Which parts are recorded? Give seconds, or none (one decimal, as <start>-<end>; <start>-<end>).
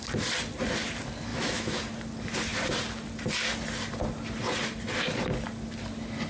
0.0-1.3; 1.8-6.3